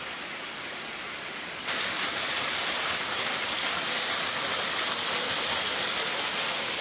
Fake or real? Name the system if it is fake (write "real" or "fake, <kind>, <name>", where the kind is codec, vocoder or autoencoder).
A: real